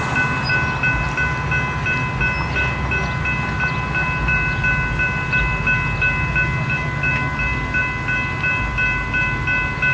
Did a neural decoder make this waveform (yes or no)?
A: no